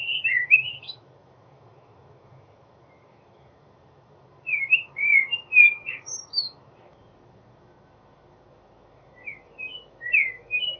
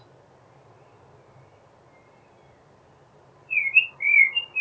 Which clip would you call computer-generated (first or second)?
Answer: first